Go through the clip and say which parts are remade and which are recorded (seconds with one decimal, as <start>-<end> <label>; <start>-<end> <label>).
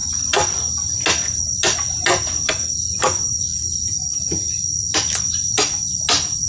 0.0-6.5 recorded